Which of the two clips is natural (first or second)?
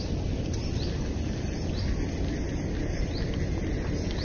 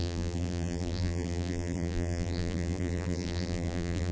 first